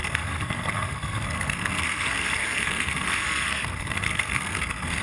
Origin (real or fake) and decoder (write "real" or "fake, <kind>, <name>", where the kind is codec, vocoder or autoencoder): fake, codec, SNAC